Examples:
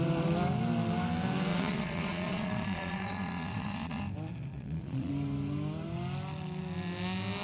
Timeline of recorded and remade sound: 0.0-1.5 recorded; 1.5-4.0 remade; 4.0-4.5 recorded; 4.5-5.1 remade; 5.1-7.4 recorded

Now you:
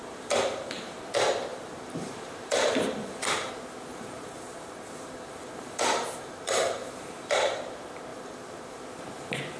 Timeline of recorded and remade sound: 0.0-1.0 remade; 1.0-1.5 recorded; 1.5-3.5 remade; 3.5-3.9 recorded; 3.9-7.6 remade; 7.6-8.1 recorded; 8.1-8.8 remade; 8.8-9.6 recorded

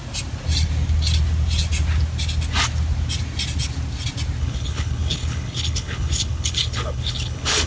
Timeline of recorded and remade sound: 0.0-4.4 recorded; 4.4-7.7 remade

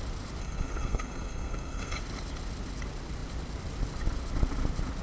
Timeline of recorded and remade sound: 0.0-0.4 recorded; 0.4-2.0 remade; 2.0-5.0 recorded

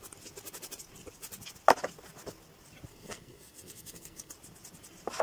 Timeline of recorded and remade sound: 0.0-2.9 recorded; 2.9-4.3 remade; 4.3-5.2 recorded

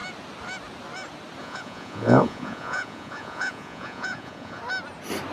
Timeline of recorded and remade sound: 0.0-1.4 recorded; 1.4-4.6 remade; 4.6-5.3 recorded